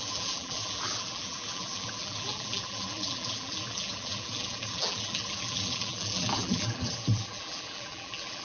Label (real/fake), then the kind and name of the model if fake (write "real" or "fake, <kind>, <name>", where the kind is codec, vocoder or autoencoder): fake, vocoder, BigVGAN v2